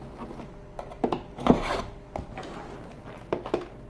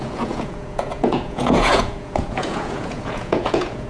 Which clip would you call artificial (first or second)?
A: second